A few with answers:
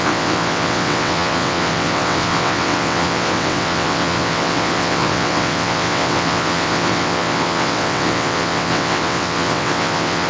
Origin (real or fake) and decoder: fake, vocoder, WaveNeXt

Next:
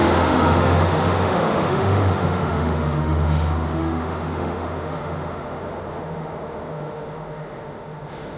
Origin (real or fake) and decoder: fake, autoencoder, DAC-VAE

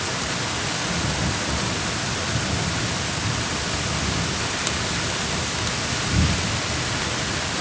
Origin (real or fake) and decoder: real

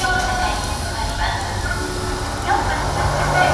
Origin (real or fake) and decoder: real